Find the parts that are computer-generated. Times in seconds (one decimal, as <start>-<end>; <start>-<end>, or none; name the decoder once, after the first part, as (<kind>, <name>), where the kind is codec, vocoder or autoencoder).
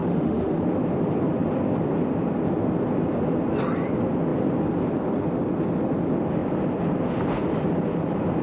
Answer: 0.0-0.6 (autoencoder, DAC-VAE)